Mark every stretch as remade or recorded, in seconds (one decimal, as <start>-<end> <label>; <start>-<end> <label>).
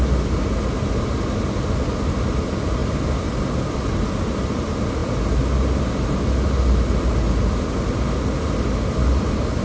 0.0-2.8 recorded; 2.8-4.5 remade; 4.5-9.6 recorded